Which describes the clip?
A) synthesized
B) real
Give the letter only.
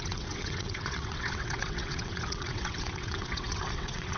A